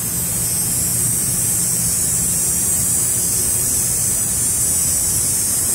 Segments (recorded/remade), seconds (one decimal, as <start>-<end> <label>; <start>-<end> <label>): 0.0-0.9 recorded; 0.9-4.3 remade; 4.3-4.8 recorded; 4.8-5.7 remade